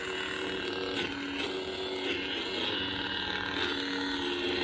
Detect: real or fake real